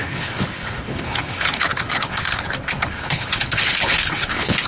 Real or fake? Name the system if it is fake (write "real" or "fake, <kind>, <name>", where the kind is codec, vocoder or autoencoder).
fake, codec, HILCodec